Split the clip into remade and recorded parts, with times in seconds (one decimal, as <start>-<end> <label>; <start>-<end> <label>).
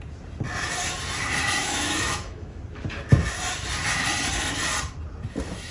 0.0-1.6 recorded; 1.6-2.6 remade; 2.6-5.7 recorded